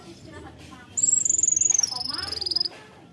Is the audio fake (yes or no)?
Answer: no